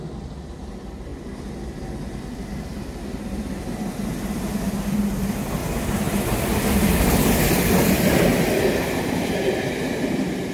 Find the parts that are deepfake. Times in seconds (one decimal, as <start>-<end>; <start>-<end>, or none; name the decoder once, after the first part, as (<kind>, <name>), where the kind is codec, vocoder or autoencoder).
none